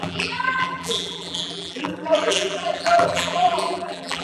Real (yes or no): no